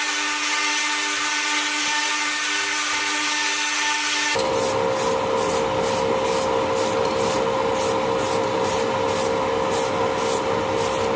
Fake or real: real